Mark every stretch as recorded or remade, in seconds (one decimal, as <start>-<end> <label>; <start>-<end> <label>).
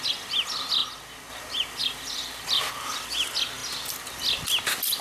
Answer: 0.0-1.8 recorded; 1.8-3.0 remade; 3.0-5.0 recorded